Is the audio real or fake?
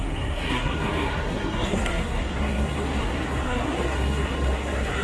fake